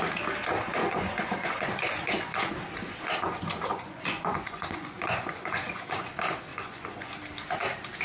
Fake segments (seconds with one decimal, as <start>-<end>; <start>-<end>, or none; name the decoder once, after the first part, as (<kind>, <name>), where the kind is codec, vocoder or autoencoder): 0.8-2.5 (vocoder, Vocos); 3.7-6.1; 6.5-7.1